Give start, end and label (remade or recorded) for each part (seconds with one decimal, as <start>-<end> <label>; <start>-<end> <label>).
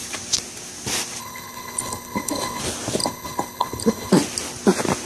0.0-1.2 recorded; 1.2-2.6 remade; 2.6-3.0 recorded; 3.0-4.1 remade; 4.1-5.1 recorded